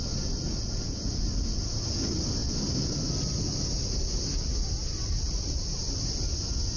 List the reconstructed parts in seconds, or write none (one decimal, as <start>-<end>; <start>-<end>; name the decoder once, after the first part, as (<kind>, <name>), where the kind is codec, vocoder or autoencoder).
none